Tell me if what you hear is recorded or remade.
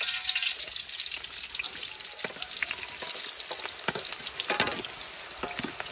recorded